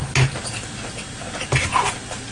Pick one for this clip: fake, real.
real